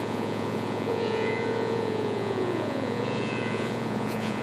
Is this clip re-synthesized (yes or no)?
yes